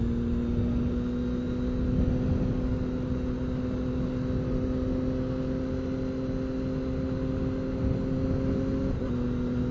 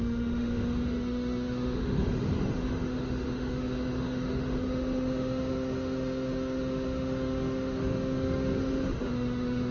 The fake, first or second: second